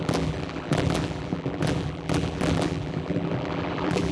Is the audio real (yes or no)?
no